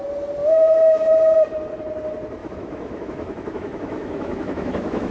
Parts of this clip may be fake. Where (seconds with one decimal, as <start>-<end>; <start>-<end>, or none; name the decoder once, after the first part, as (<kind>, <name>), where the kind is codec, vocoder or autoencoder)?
0.4-1.1 (autoencoder, DAC-VAE); 2.4-5.1